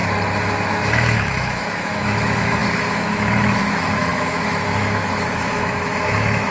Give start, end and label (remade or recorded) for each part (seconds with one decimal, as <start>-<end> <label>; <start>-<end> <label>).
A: 0.0-0.7 recorded; 0.7-6.5 remade